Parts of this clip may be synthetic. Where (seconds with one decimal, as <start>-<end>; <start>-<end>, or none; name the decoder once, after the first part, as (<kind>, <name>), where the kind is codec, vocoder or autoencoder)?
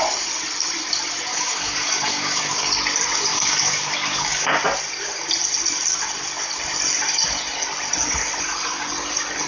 1.3-2.7 (codec, DAC); 3.3-4.5